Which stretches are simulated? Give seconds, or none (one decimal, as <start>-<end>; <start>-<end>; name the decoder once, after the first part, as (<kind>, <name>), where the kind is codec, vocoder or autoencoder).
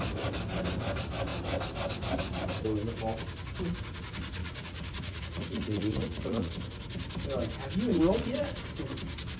4.4-6.5 (vocoder, Vocos); 7.9-8.6